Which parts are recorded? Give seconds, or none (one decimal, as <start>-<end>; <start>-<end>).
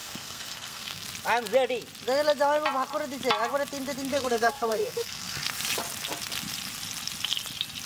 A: 1.0-4.1; 5.4-7.9